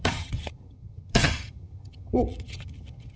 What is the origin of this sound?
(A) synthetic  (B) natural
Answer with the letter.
A